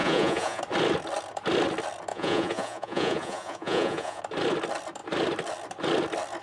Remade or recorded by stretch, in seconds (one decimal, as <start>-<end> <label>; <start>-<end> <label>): 0.0-0.6 remade; 0.6-2.1 recorded; 2.1-4.2 remade; 4.2-6.4 recorded